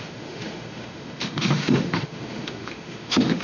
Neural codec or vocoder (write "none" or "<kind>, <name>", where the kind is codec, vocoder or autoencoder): autoencoder, DAC-VAE